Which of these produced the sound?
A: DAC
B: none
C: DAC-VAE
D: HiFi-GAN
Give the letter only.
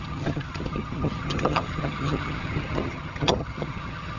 D